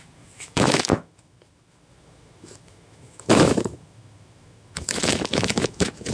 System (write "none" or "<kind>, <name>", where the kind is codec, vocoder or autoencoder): autoencoder, DAC-VAE